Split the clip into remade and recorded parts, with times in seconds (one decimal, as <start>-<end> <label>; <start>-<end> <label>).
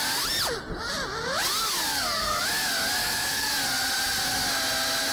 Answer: 0.0-1.9 recorded; 1.9-2.4 remade; 2.4-3.0 recorded; 3.0-3.5 remade; 3.5-5.1 recorded